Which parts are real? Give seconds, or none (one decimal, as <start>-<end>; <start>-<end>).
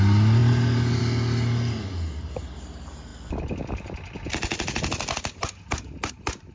0.0-0.4; 1.0-6.5